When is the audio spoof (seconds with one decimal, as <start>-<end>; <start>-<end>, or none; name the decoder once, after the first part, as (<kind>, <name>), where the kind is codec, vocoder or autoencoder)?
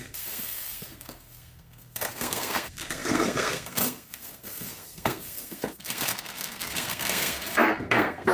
0.0-8.3 (codec, SNAC)